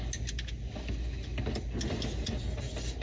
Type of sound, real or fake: real